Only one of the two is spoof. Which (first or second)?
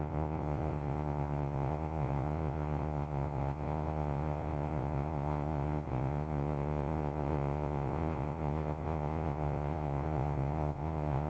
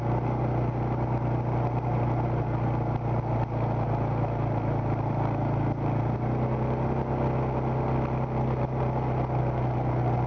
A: first